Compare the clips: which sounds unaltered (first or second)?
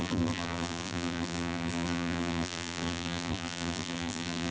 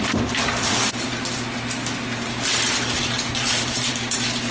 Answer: second